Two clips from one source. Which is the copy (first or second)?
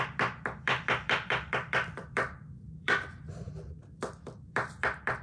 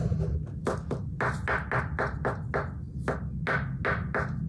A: first